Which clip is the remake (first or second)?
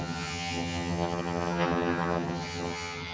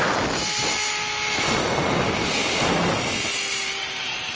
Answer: first